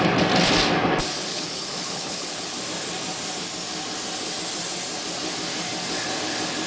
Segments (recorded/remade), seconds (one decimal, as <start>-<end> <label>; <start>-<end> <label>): 0.0-1.3 recorded; 1.3-2.6 remade; 2.6-6.7 recorded